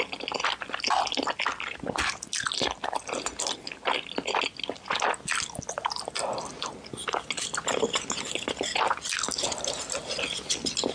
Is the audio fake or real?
real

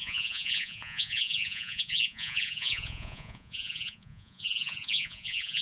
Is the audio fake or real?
fake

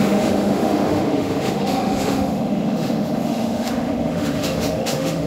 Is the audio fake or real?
fake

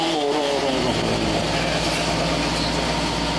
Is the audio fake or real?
real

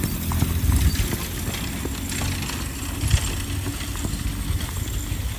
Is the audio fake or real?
real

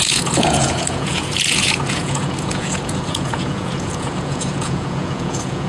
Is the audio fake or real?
fake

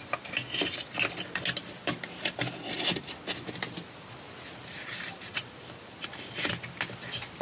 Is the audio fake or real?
real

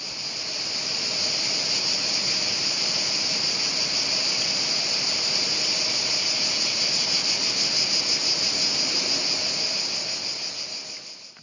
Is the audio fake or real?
real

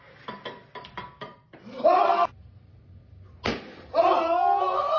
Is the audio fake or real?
real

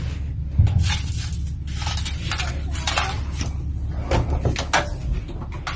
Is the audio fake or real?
real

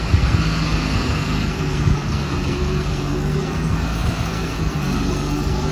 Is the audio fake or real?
fake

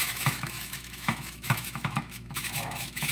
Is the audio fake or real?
fake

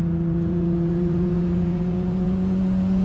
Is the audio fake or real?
fake